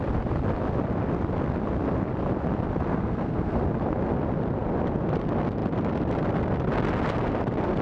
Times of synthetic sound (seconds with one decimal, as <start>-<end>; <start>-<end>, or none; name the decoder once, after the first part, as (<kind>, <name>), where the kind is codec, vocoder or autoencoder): 2.9-3.6 (codec, SNAC)